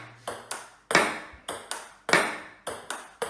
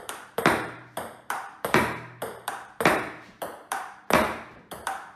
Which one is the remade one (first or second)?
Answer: second